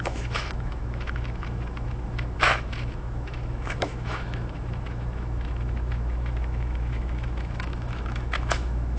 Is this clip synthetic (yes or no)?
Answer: yes